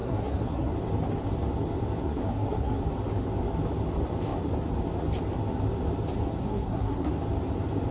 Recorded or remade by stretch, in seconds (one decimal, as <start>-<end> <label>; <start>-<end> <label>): 0.0-0.7 remade; 0.7-2.0 recorded; 2.0-2.8 remade; 2.8-6.4 recorded; 6.4-7.1 remade; 7.1-7.9 recorded